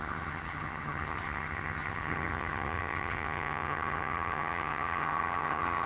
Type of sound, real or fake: fake